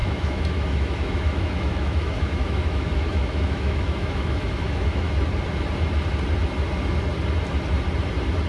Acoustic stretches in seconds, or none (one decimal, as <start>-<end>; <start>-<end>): 5.1-8.5